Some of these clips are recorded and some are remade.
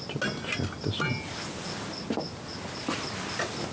recorded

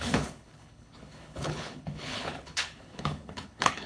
remade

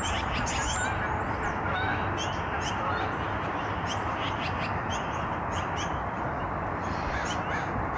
recorded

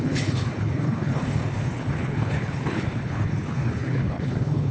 remade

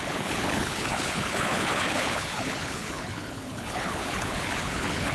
remade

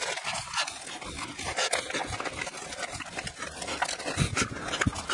recorded